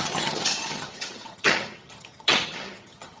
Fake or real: fake